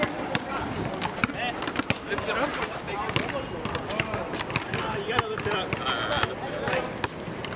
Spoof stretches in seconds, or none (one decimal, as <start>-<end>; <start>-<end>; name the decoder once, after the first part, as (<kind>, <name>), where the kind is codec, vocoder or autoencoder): none